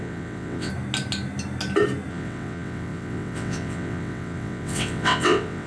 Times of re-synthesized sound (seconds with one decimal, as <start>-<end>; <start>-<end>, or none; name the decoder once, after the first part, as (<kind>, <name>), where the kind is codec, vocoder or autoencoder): 0.0-0.7 (vocoder, WaveNeXt); 2.1-5.7